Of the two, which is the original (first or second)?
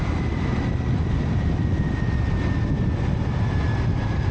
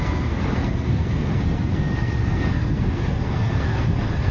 first